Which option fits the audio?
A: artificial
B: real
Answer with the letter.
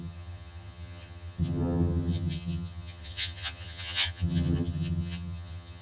A